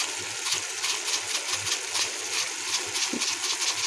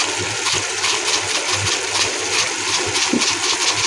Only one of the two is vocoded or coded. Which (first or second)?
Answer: second